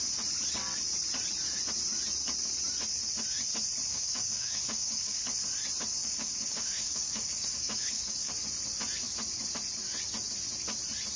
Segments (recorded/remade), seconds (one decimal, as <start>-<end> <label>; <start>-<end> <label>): 0.0-3.9 recorded; 3.9-5.2 remade; 5.2-6.0 recorded; 6.0-8.3 remade; 8.3-11.2 recorded